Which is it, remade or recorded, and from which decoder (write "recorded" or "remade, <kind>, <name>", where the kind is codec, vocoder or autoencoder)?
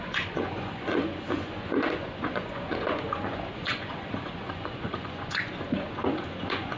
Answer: remade, vocoder, Vocos